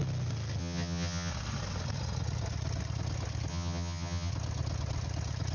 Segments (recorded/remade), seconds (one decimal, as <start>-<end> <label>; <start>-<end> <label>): 0.0-0.6 recorded; 0.6-1.3 remade; 1.3-3.5 recorded; 3.5-4.3 remade; 4.3-5.5 recorded